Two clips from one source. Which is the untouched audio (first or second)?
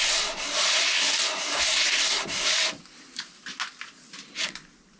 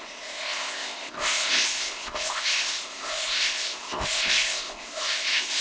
first